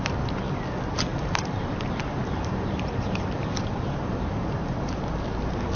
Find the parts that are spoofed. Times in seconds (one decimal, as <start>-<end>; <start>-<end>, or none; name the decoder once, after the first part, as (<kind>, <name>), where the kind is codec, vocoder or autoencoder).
1.1-4.6 (vocoder, BigVGAN v2)